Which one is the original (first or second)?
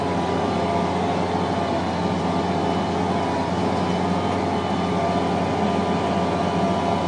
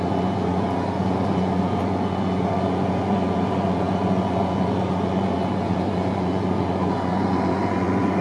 first